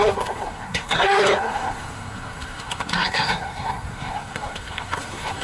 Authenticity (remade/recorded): remade